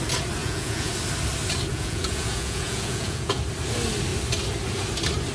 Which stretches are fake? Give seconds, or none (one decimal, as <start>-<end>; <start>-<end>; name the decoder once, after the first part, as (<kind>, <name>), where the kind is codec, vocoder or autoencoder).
0.4-0.9 (vocoder, Vocos); 1.7-3.4